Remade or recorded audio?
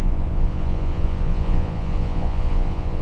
remade